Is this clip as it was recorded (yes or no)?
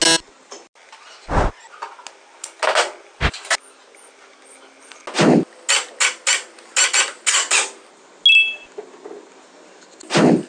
yes